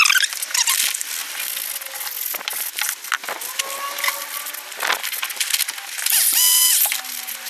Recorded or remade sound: recorded